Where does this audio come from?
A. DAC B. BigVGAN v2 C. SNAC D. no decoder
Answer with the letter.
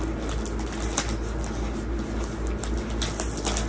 D